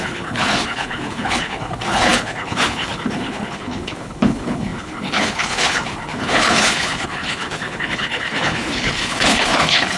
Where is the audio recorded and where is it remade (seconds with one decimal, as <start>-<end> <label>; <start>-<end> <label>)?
0.0-10.0 remade